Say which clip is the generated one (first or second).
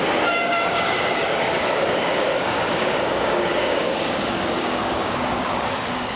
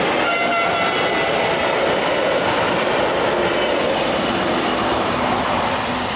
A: first